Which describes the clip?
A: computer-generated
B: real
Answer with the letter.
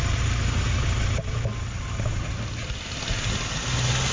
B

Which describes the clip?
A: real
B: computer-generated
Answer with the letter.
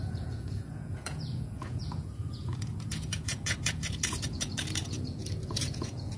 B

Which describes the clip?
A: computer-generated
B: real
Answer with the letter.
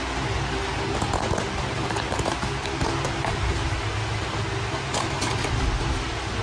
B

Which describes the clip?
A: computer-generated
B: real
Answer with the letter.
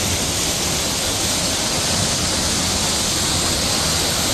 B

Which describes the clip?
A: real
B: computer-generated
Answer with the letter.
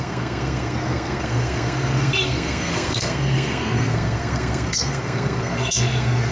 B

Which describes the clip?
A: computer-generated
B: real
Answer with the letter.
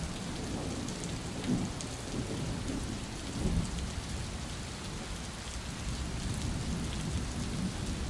B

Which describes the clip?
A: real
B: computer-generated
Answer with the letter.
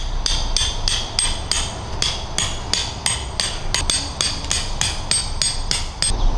A